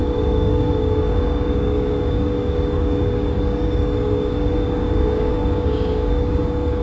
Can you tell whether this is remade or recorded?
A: remade